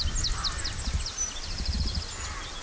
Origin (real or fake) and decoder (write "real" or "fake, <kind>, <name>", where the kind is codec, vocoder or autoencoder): real